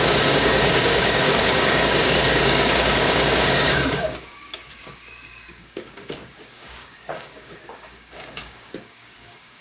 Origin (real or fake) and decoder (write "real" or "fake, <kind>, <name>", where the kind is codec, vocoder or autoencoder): fake, codec, DAC